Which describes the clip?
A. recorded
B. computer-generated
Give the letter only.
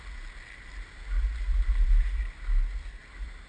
A